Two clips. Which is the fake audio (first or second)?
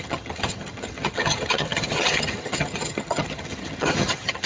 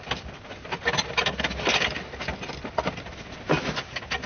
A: first